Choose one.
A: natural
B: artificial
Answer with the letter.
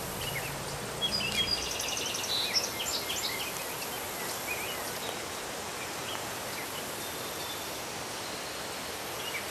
A